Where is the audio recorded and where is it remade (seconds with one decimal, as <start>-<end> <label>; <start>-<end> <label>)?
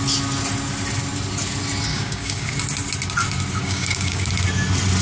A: 0.0-1.9 recorded; 1.9-2.6 remade; 2.6-3.6 recorded; 3.6-4.3 remade; 4.3-5.0 recorded